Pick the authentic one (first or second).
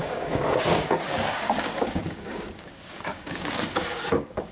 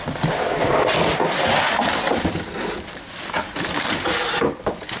second